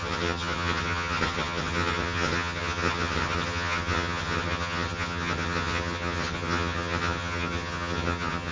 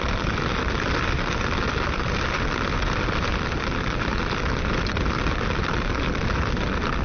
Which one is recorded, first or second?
second